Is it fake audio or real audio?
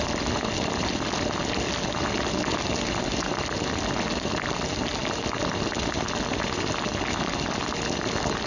real